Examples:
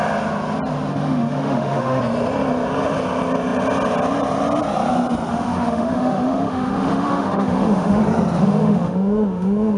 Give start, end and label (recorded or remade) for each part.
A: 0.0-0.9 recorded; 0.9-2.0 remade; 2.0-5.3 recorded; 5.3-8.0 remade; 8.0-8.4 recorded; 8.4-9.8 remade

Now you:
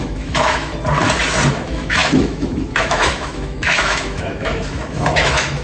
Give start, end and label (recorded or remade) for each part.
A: 0.0-0.7 remade; 0.7-1.5 recorded; 1.5-5.6 remade